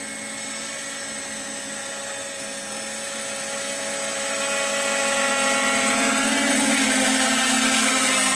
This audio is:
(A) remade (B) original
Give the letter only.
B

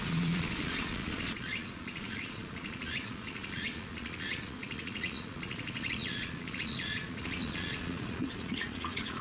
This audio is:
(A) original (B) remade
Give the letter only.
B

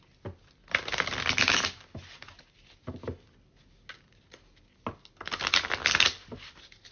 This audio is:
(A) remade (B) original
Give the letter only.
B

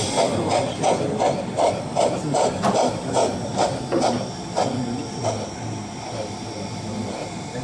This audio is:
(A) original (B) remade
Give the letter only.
A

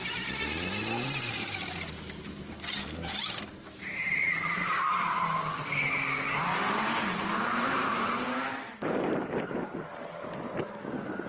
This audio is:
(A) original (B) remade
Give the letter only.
B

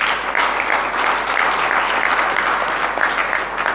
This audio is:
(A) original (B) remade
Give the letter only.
A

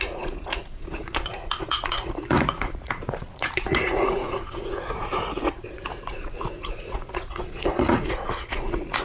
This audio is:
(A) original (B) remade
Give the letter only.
B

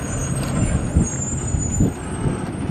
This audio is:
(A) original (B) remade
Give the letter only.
A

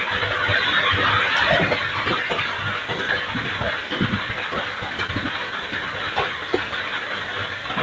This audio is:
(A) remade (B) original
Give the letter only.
B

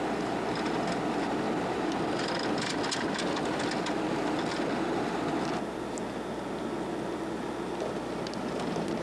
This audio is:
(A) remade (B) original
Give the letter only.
B